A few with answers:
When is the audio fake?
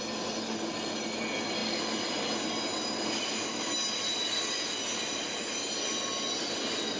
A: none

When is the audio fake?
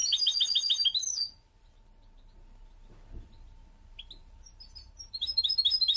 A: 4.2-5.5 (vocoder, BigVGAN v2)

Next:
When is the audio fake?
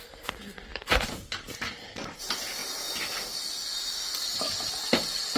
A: 0.7-2.2 (vocoder, BigVGAN v2); 2.6-5.4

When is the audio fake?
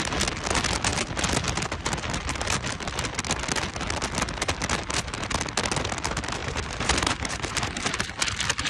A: 6.4-8.0 (vocoder, BigVGAN v2)